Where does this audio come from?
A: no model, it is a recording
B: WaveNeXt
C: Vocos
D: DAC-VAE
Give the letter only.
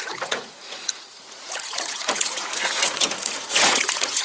C